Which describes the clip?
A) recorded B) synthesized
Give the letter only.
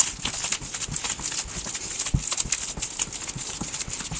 A